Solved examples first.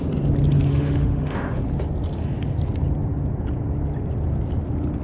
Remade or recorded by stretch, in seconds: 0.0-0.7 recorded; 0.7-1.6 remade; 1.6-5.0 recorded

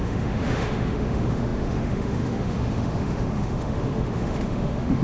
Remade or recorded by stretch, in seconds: 0.0-5.0 remade

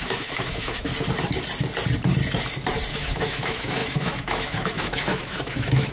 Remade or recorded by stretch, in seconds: 0.0-0.9 remade; 0.9-2.9 recorded; 2.9-5.9 remade